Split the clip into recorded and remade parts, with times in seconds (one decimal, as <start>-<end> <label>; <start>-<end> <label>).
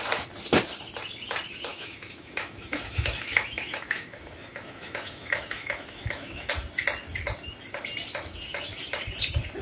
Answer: 0.0-1.7 recorded; 1.7-6.5 remade; 6.5-9.6 recorded